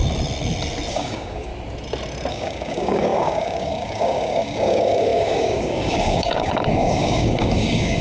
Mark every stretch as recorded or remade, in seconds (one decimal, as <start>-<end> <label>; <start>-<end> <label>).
0.0-0.9 recorded; 0.9-1.5 remade; 1.5-2.3 recorded; 2.3-8.0 remade